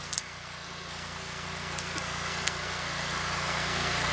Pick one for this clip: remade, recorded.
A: remade